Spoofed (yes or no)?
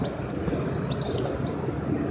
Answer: no